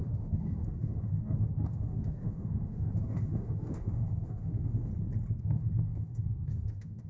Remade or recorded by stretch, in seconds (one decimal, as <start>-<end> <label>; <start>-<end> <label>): 0.0-4.9 remade; 4.9-5.4 recorded; 5.4-7.1 remade